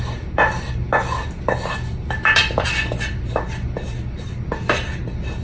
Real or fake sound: real